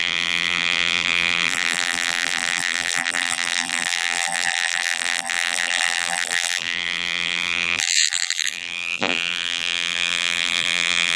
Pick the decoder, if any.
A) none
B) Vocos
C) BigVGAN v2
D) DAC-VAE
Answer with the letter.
C